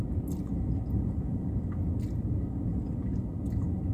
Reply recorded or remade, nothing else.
recorded